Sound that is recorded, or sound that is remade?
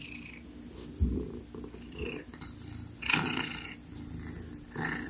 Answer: recorded